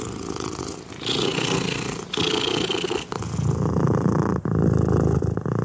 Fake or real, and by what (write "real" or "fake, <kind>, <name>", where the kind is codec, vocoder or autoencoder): real